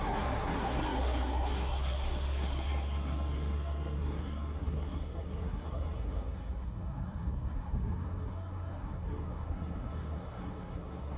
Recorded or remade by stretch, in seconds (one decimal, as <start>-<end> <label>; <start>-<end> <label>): 0.0-11.2 remade